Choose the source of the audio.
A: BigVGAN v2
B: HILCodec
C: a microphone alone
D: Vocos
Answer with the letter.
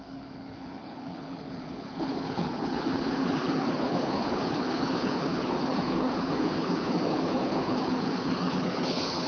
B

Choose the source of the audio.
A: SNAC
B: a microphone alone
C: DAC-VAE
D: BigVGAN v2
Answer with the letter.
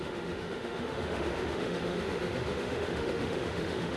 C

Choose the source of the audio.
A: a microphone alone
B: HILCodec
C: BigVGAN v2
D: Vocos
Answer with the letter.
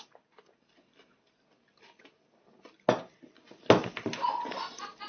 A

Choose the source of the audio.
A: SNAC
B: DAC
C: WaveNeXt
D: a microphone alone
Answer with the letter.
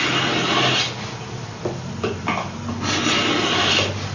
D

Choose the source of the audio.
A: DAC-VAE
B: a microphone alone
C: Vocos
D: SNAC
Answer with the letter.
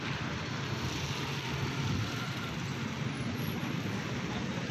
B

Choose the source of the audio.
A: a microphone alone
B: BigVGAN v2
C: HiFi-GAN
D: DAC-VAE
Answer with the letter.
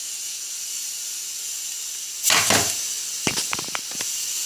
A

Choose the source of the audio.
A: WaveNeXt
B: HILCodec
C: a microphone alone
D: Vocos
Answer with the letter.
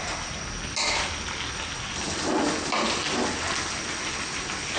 C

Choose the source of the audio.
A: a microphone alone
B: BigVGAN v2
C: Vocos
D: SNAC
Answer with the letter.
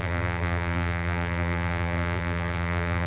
B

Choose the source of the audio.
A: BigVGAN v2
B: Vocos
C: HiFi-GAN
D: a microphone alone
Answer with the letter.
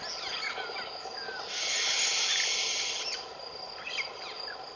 A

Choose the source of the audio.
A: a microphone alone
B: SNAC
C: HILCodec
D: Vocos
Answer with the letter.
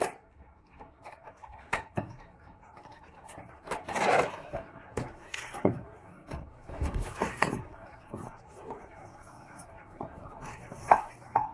B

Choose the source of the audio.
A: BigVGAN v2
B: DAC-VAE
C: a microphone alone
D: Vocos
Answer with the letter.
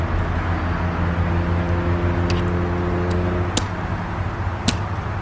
C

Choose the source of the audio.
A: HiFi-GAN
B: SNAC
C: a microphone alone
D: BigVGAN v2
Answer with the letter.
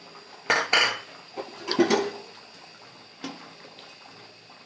C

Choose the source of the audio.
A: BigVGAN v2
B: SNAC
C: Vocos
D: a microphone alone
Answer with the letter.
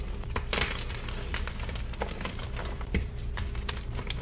A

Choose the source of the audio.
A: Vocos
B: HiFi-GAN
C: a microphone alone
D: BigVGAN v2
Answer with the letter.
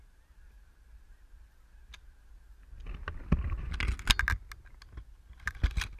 C